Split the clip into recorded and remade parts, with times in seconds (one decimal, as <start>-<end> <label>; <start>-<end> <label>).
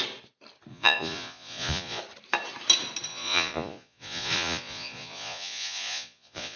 0.0-0.7 recorded; 0.7-2.0 remade; 2.0-3.1 recorded; 3.1-6.6 remade